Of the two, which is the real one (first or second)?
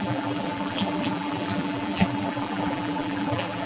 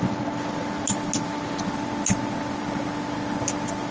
second